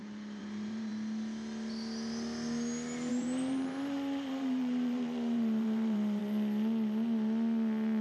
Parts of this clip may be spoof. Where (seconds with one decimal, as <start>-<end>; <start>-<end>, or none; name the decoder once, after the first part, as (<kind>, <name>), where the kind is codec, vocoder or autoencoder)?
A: 0.0-0.9 (vocoder, BigVGAN v2); 3.1-6.2